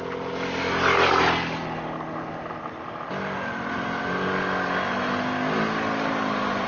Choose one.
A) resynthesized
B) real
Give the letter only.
B